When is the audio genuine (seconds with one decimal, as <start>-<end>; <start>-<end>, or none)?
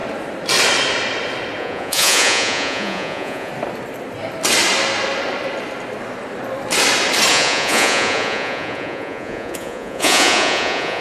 0.0-1.6; 3.5-7.3